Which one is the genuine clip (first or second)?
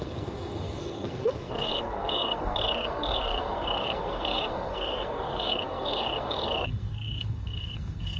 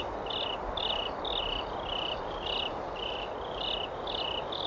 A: second